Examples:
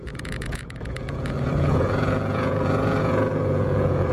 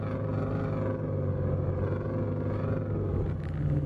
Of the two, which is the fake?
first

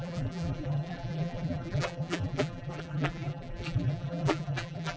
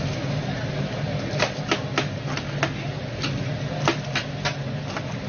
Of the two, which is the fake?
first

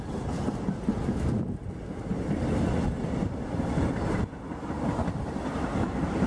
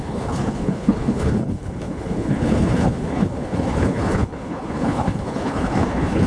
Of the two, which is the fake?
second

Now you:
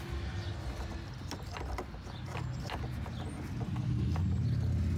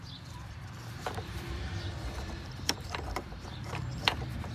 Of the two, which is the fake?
second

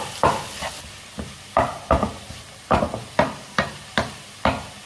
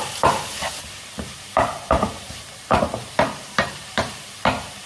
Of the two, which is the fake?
second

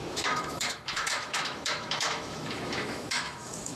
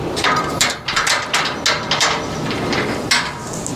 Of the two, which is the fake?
first